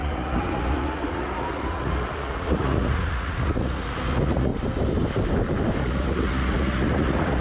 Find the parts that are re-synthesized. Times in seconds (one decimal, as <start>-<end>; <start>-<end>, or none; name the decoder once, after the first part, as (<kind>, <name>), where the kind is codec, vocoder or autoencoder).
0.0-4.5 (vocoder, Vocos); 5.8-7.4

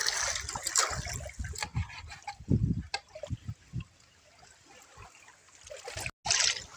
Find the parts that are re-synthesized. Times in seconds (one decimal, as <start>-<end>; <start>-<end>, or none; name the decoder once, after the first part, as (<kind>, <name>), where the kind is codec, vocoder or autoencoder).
none

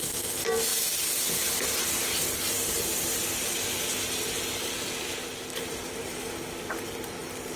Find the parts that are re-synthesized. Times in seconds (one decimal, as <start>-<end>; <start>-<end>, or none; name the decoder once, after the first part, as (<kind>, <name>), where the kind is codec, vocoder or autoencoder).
none